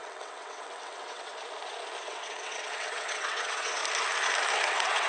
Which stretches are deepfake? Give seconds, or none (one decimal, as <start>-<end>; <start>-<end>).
0.0-1.3; 2.0-3.8; 4.6-5.1